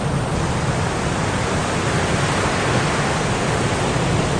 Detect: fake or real real